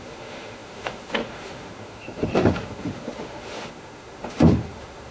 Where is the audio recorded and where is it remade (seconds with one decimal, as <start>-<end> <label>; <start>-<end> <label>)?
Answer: 0.0-5.1 remade